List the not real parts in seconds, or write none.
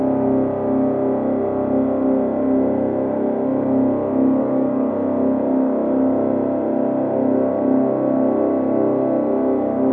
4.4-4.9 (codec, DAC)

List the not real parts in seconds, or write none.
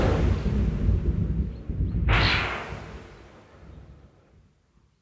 none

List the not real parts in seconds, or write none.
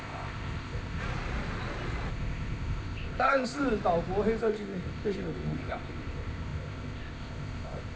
0.0-1.0 (codec, ZipCodec); 2.1-3.6; 4.4-8.0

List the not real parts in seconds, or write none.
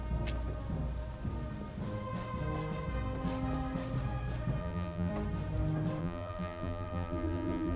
4.6-5.1 (vocoder, BigVGAN v2); 6.0-7.8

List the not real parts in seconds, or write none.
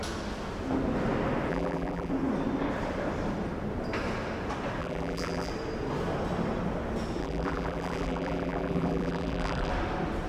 1.5-2.1 (vocoder, BigVGAN v2); 4.8-5.5; 7.2-9.7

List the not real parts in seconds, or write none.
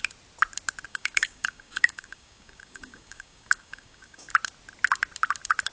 0.9-4.3 (codec, DAC)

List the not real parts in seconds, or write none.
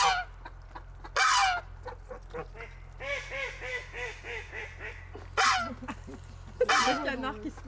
3.7-4.5 (codec, DAC)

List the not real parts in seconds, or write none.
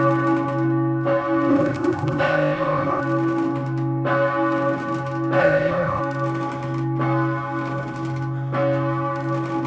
1.5-3.0 (codec, ZipCodec); 5.4-6.0